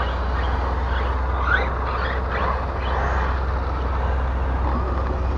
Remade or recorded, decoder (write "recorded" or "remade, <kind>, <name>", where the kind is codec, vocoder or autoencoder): recorded